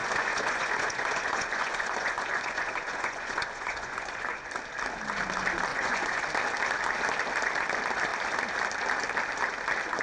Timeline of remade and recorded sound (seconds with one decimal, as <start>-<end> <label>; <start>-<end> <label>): 0.0-4.5 remade; 4.5-5.7 recorded; 5.7-6.2 remade; 6.2-10.0 recorded